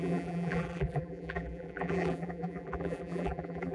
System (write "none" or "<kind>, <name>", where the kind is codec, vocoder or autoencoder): vocoder, BigVGAN v2